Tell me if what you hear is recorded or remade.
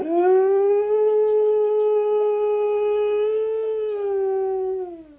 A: recorded